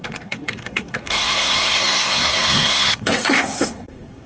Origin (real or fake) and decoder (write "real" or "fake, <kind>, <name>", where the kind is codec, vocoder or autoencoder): fake, codec, SNAC